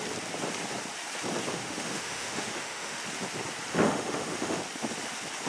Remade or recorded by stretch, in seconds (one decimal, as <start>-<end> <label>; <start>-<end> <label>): 0.0-1.5 recorded; 1.5-3.0 remade; 3.0-3.7 recorded; 3.7-4.6 remade; 4.6-5.5 recorded